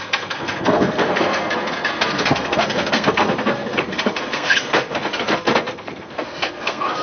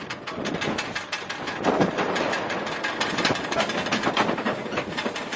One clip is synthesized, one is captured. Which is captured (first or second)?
second